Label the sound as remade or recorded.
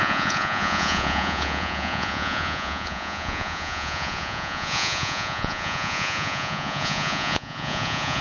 remade